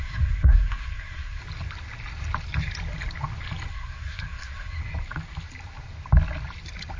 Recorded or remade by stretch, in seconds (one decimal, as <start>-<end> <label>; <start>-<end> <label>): 0.0-1.4 remade; 1.4-3.7 recorded; 3.7-4.8 remade; 4.8-7.0 recorded